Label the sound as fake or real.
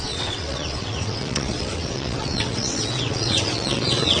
fake